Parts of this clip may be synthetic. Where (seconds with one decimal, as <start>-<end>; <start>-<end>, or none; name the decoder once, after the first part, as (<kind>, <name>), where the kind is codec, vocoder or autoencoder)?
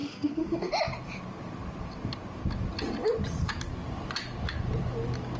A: 0.0-0.7 (codec, SNAC)